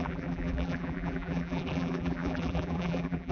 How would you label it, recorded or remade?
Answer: remade